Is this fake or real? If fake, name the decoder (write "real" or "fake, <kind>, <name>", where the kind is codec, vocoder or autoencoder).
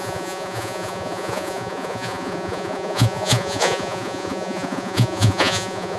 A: fake, vocoder, Vocos